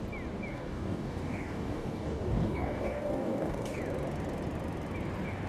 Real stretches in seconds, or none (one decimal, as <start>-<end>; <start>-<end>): 0.0-0.5; 3.8-5.5